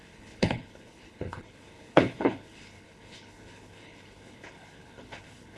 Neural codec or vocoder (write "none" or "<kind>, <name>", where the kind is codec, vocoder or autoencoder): codec, HILCodec